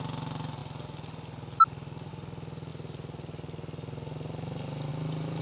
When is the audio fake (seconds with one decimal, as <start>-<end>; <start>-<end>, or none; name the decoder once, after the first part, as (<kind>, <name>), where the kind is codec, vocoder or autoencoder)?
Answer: none